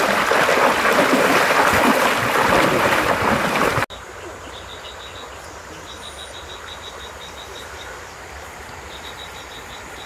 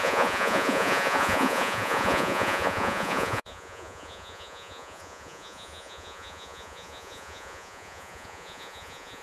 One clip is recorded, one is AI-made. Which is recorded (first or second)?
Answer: first